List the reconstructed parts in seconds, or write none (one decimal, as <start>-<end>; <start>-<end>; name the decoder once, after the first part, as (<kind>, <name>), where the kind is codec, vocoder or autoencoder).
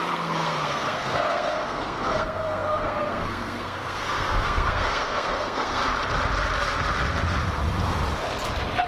0.0-5.8 (codec, SNAC)